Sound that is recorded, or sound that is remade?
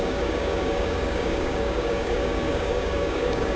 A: remade